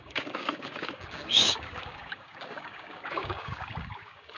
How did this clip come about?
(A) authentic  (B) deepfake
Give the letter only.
B